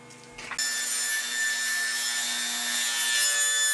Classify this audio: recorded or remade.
recorded